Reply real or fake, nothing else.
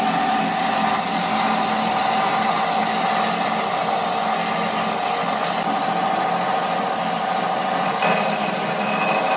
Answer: real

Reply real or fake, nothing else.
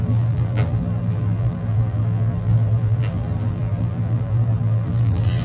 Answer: fake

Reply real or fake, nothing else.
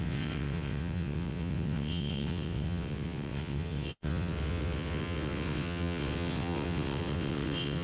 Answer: fake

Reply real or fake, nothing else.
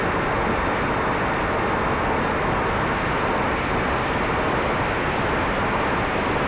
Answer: real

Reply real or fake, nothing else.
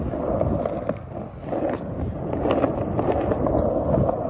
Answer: real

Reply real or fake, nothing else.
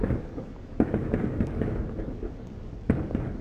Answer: fake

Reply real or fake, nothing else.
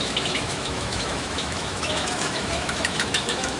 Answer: fake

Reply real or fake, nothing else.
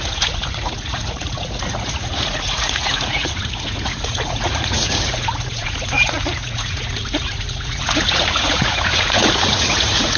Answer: fake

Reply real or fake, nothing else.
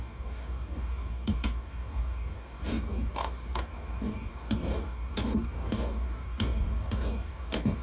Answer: fake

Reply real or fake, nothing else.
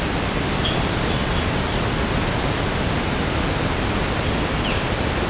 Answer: real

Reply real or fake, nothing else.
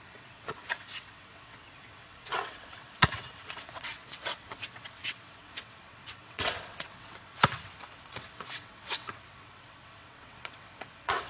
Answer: fake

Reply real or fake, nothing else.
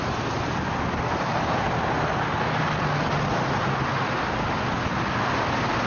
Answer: real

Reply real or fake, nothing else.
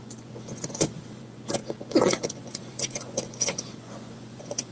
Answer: fake